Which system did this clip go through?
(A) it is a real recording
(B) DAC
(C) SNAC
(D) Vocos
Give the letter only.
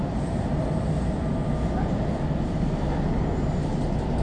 A